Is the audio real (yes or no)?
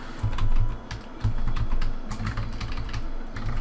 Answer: yes